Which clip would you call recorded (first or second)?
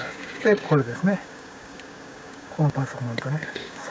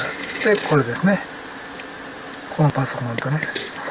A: second